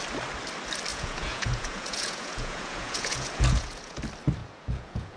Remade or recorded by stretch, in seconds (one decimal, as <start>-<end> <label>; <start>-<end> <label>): 0.0-0.9 recorded; 0.9-4.0 remade; 4.0-4.4 recorded; 4.4-5.2 remade